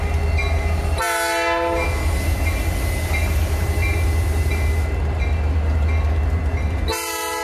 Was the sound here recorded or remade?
recorded